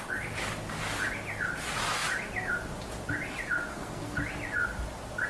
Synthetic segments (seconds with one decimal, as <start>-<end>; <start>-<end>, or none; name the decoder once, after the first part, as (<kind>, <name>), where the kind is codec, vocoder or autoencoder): 3.7-4.2 (codec, SNAC)